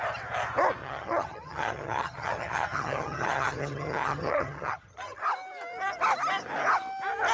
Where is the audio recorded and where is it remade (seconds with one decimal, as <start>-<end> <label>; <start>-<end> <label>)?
0.0-0.8 recorded; 0.8-5.2 remade; 5.2-7.3 recorded